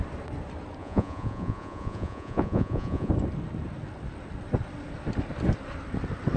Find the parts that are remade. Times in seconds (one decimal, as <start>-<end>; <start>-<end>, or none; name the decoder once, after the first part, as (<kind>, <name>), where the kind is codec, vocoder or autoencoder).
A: 0.8-3.1 (vocoder, Vocos)